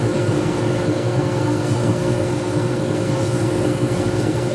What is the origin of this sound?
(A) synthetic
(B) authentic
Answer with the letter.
A